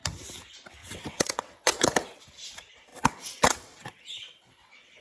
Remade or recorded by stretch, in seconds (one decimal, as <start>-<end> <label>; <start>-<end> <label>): 0.0-0.8 recorded; 0.8-2.2 remade; 2.2-2.9 recorded; 2.9-5.0 remade